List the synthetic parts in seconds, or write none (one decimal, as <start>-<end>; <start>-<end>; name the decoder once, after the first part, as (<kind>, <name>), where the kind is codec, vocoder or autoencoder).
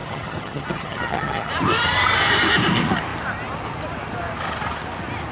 0.0-1.5 (vocoder, HiFi-GAN)